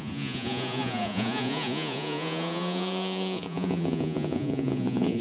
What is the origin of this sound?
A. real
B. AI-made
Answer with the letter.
B